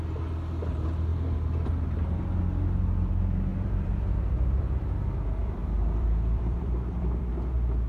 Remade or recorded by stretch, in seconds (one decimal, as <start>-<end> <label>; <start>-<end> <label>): 0.0-3.5 recorded; 3.5-4.9 remade; 4.9-5.4 recorded; 5.4-7.3 remade; 7.3-7.9 recorded